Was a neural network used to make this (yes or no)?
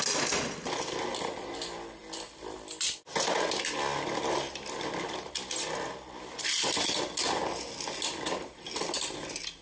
no